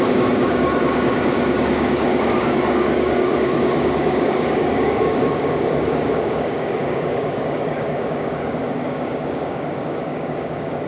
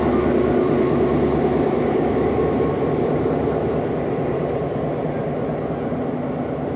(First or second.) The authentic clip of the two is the second